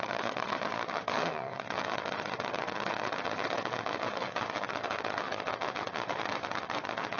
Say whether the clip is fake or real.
fake